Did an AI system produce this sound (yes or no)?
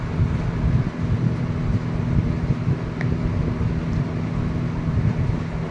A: no